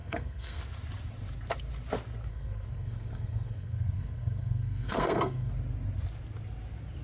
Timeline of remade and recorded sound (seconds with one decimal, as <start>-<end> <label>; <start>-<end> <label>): 0.0-0.6 remade; 0.6-2.3 recorded; 2.3-5.5 remade; 5.5-7.0 recorded